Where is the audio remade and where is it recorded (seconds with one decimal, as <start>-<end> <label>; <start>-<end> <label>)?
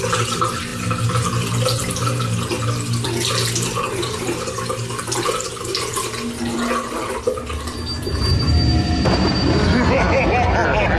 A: 0.0-11.0 recorded